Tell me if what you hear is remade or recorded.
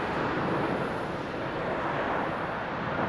recorded